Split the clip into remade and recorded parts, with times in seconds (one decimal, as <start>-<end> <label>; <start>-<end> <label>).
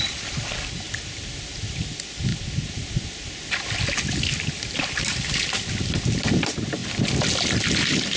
0.0-2.3 remade; 2.3-5.6 recorded; 5.6-6.8 remade; 6.8-8.2 recorded